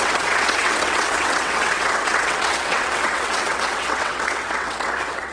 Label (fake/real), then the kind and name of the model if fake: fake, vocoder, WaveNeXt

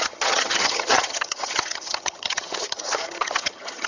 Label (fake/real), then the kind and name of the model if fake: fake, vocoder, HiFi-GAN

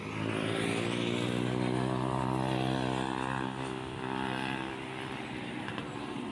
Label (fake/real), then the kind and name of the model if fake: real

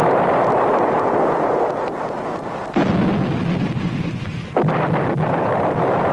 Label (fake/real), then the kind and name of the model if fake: real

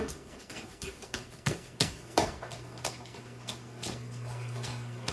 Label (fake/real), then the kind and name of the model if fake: fake, codec, SNAC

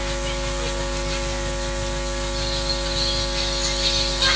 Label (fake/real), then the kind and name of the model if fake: real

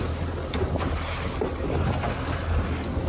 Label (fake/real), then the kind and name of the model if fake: real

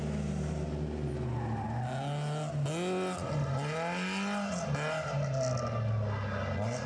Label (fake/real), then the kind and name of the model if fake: real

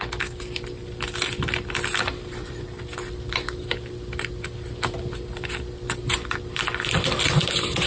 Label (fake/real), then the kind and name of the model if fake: real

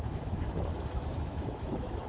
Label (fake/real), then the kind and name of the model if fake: fake, autoencoder, DAC-VAE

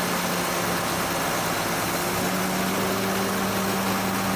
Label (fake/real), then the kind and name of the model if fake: real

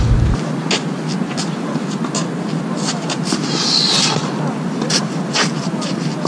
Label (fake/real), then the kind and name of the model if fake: real